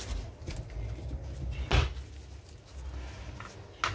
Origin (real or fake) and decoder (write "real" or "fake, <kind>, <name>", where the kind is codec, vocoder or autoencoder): real